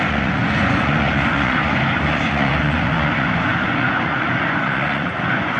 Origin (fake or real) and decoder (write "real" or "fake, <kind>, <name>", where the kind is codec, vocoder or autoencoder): fake, vocoder, Vocos